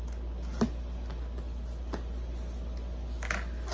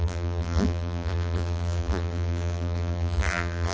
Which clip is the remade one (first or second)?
second